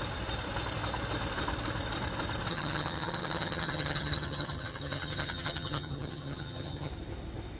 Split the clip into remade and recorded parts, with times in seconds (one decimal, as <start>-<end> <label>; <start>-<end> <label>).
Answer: 0.0-2.5 recorded; 2.5-6.9 remade; 6.9-7.6 recorded